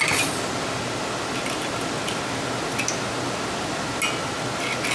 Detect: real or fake real